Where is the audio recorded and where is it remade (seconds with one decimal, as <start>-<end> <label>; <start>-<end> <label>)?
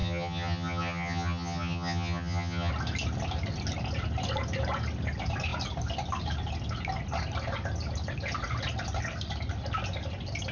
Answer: 0.0-2.7 remade; 2.7-10.5 recorded